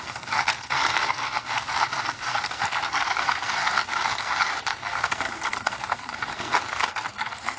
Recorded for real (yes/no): no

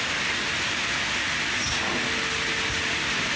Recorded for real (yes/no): yes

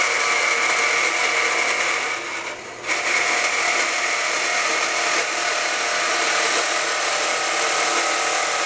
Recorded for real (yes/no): yes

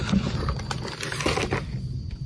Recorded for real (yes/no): yes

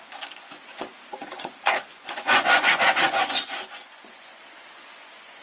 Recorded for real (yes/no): no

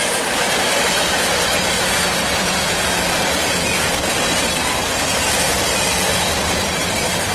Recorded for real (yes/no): yes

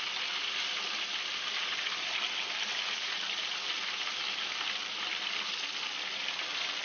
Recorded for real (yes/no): yes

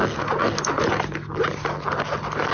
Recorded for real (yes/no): yes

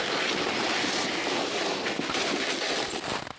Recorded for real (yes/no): yes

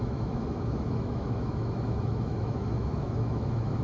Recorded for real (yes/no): no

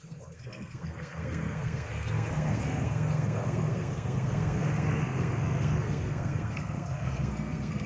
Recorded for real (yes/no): no